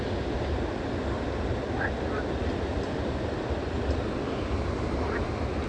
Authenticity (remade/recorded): recorded